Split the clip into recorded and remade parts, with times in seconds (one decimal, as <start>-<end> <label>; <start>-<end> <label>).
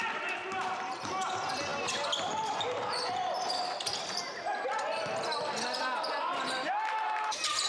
0.0-7.7 recorded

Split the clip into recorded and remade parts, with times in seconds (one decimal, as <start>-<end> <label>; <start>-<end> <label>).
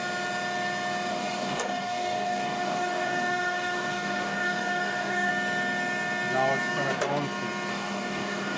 0.0-1.1 recorded; 1.1-5.3 remade; 5.3-7.7 recorded; 7.7-8.6 remade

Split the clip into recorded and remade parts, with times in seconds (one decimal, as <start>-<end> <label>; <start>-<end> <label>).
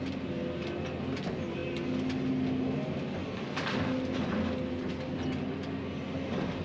0.0-6.6 recorded